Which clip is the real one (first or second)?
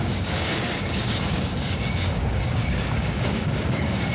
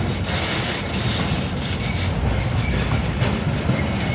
second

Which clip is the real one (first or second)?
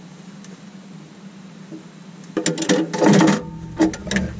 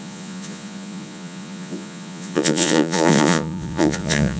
first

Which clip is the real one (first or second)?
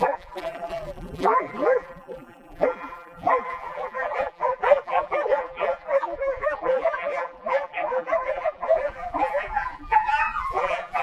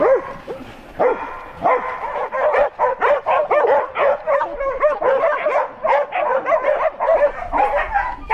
second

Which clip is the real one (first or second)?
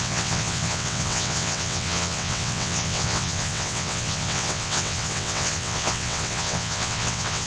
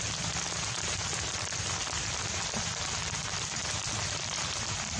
second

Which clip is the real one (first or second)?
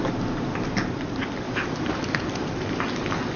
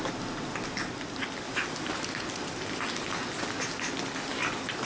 second